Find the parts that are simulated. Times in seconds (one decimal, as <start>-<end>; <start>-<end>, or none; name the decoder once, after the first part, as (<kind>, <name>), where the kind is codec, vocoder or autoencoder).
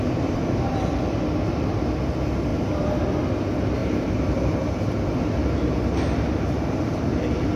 2.5-3.0 (vocoder, BigVGAN v2); 3.8-4.8; 5.4-7.1